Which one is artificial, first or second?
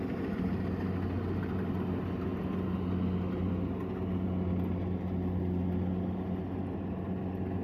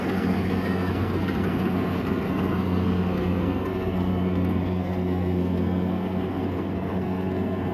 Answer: second